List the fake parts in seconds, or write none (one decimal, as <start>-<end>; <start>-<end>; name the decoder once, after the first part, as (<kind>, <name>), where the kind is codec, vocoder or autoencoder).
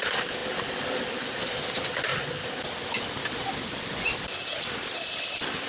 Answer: none